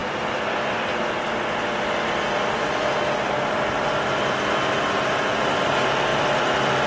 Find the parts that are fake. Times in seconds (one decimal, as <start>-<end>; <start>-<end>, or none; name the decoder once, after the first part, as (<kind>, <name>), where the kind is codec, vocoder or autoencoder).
6.1-6.9 (vocoder, BigVGAN v2)